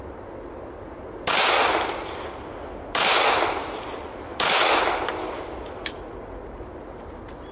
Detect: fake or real real